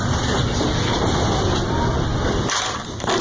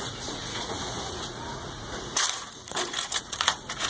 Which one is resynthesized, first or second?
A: second